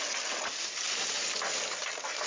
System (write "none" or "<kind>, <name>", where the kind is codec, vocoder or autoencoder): none